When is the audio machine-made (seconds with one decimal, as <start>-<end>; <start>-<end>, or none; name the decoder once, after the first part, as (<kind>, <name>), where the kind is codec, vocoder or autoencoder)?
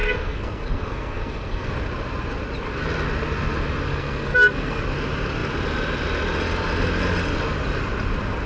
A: 0.0-1.7 (codec, SNAC); 3.9-4.8